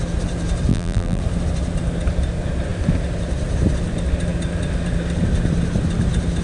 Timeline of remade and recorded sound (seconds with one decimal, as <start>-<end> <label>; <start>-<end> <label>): 0.0-0.7 recorded; 0.7-1.2 remade; 1.2-6.4 recorded

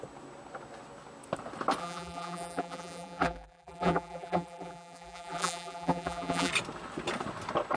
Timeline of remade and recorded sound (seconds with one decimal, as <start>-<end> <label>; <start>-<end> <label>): 0.0-1.8 recorded; 1.8-6.5 remade; 6.5-7.8 recorded

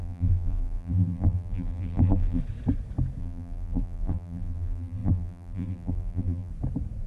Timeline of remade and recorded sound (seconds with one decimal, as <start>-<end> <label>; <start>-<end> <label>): 0.0-2.4 remade; 2.4-3.2 recorded; 3.2-6.5 remade; 6.5-7.1 recorded

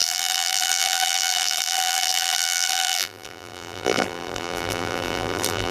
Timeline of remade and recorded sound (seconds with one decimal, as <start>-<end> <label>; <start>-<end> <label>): 0.0-5.7 remade

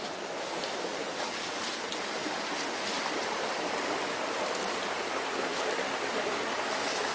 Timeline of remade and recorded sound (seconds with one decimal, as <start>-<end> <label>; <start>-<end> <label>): 0.0-0.9 recorded; 0.9-1.6 remade; 1.6-7.1 recorded

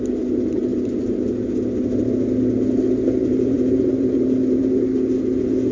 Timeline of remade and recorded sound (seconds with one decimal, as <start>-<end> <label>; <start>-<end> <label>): 0.0-3.3 recorded; 3.3-4.6 remade; 4.6-5.7 recorded

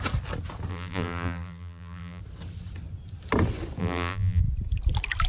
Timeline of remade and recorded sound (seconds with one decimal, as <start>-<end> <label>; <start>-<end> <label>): 0.0-0.7 recorded; 0.7-2.2 remade; 2.2-3.8 recorded; 3.8-4.4 remade; 4.4-5.3 recorded

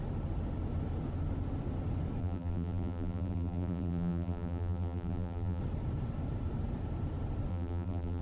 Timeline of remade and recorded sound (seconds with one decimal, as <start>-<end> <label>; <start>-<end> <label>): 0.0-2.2 recorded; 2.2-5.6 remade; 5.6-7.5 recorded; 7.5-8.2 remade